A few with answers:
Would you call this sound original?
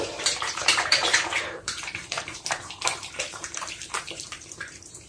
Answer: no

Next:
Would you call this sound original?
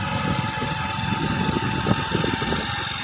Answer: yes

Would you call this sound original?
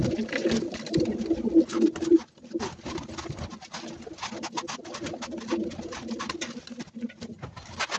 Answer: yes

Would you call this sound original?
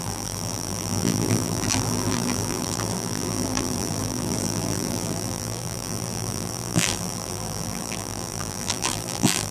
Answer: no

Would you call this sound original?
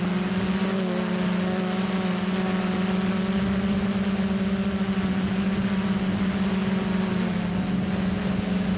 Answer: yes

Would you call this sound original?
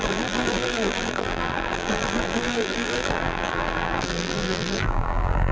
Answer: no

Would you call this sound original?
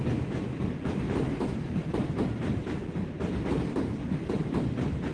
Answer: no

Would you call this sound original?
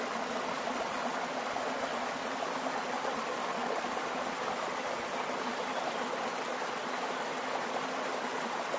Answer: yes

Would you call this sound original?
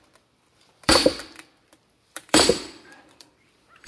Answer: no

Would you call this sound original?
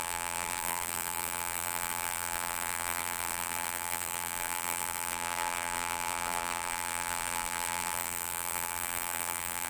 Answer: no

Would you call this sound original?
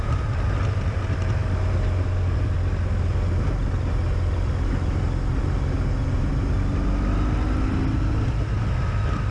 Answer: yes